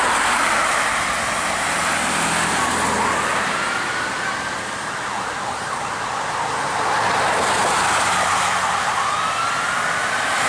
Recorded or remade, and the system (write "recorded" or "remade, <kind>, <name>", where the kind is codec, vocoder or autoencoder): recorded